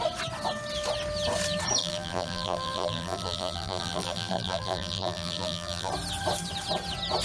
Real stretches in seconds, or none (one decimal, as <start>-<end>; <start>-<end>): 0.0-1.8; 5.9-7.2

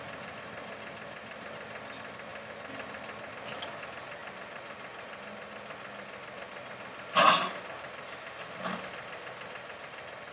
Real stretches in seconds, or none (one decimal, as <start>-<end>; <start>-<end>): 0.0-10.3

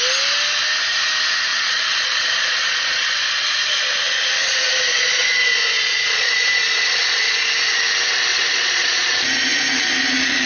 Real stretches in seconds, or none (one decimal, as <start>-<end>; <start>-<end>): 0.0-1.5; 3.8-4.9; 7.5-8.3; 9.1-10.5

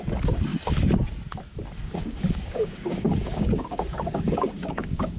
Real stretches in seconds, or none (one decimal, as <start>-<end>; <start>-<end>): 0.0-1.8

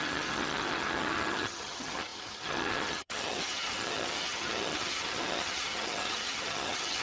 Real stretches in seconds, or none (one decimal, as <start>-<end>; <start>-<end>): none

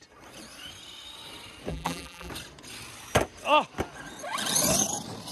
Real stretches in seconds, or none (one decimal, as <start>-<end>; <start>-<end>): 0.0-1.7; 2.3-5.3